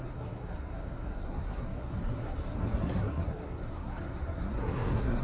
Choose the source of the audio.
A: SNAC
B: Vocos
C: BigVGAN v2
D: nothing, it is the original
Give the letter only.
A